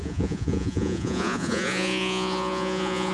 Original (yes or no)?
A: no